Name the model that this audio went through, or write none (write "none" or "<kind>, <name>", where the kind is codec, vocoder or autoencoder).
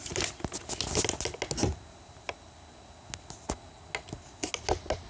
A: none